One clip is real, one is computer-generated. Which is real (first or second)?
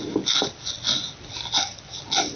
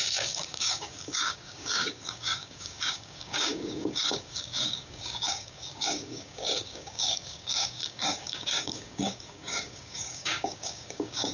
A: first